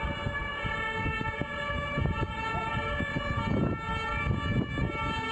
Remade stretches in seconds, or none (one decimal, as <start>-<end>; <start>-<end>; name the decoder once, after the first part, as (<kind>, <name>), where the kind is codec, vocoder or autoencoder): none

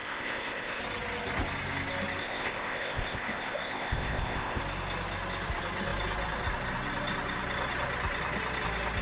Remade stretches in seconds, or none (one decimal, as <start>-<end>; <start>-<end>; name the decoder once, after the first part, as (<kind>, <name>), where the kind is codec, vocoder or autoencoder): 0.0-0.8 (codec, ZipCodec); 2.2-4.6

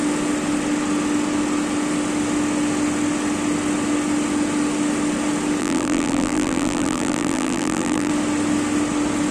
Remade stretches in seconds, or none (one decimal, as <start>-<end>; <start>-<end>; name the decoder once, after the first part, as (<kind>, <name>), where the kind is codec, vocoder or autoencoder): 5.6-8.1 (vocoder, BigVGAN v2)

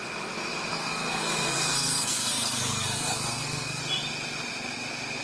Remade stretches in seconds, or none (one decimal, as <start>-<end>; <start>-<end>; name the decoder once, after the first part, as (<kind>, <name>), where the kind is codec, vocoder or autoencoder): 0.7-3.8 (codec, SNAC)

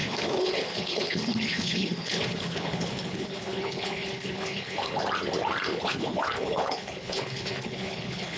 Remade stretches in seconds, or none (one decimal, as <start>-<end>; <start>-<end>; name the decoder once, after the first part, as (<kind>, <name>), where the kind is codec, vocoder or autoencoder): 0.0-5.0 (codec, HILCodec); 5.7-8.4

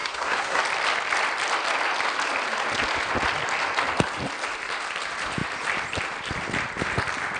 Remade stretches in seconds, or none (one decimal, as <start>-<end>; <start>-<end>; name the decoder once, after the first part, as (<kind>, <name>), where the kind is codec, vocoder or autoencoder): 0.0-0.6 (codec, SNAC)

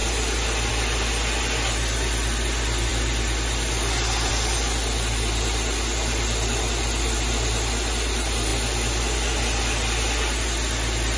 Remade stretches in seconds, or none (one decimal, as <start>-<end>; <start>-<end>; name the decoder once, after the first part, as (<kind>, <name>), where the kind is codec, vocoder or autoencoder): none